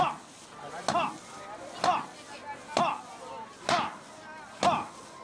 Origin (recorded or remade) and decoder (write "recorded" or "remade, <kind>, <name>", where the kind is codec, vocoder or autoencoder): recorded